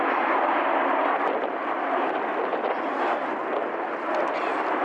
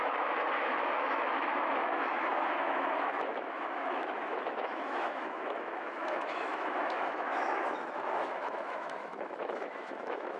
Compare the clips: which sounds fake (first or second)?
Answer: second